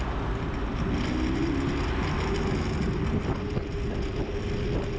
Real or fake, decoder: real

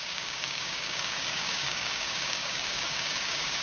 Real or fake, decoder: fake, codec, DAC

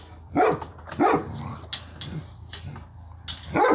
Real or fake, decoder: real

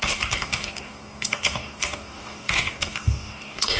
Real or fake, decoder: fake, codec, DAC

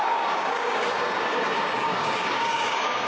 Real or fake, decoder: fake, codec, DAC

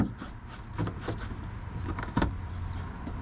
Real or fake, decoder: real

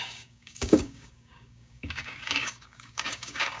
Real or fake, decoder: fake, codec, DAC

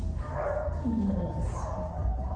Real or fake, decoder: fake, codec, DAC